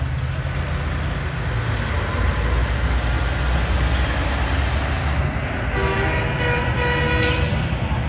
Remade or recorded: recorded